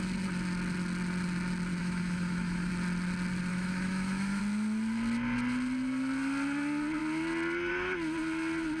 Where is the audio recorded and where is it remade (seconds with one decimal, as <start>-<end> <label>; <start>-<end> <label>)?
0.0-1.8 recorded; 1.8-2.7 remade; 2.7-3.5 recorded; 3.5-4.4 remade; 4.4-8.8 recorded